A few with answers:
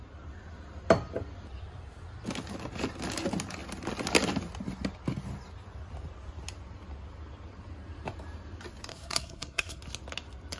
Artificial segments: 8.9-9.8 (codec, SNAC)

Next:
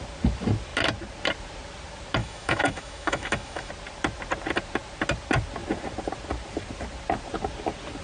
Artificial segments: 2.2-3.7 (autoencoder, DAC-VAE)

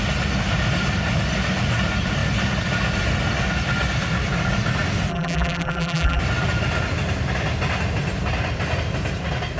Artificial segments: 5.1-6.2 (vocoder, BigVGAN v2)

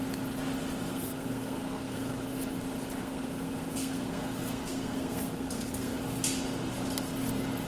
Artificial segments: 0.9-2.1 (codec, SNAC); 3.0-6.0